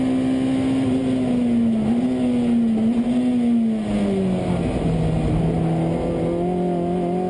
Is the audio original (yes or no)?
yes